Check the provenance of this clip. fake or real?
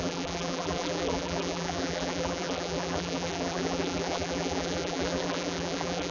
fake